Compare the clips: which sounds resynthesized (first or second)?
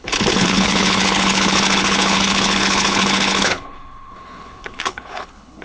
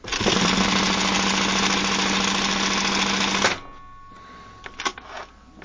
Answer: first